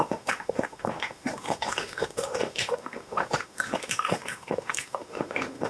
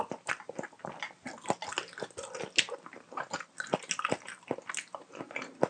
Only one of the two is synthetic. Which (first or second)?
first